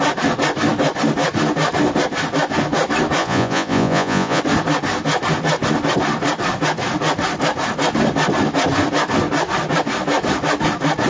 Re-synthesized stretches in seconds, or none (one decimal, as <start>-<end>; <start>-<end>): 3.2-4.4